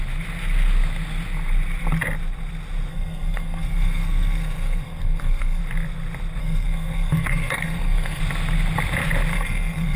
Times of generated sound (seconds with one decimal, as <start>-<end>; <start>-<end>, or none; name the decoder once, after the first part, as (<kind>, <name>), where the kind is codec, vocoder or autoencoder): 2.9-5.6 (codec, SNAC); 6.4-8.2; 9.3-10.0